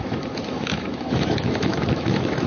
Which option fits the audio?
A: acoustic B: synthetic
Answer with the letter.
B